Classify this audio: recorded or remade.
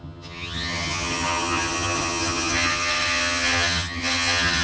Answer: remade